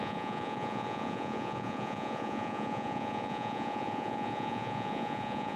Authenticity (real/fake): fake